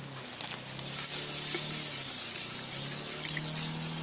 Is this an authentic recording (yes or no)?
yes